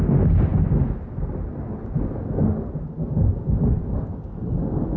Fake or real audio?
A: real